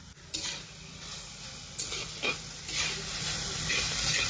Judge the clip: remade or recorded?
recorded